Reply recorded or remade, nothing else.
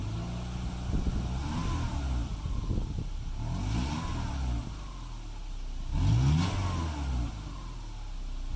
recorded